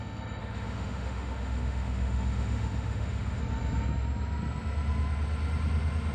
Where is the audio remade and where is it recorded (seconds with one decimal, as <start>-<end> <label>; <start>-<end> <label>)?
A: 0.0-0.4 recorded; 0.4-3.4 remade; 3.4-6.1 recorded